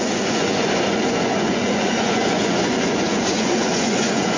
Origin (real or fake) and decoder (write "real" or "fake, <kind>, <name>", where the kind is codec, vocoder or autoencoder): fake, vocoder, Vocos